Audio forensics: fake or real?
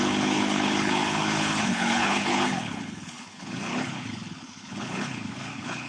fake